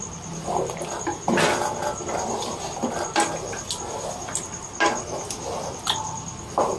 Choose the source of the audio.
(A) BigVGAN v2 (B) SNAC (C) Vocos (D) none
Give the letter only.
D